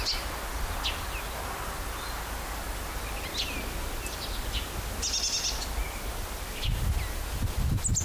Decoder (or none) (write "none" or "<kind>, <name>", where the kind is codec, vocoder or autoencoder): none